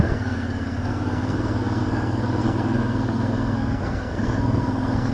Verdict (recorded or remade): remade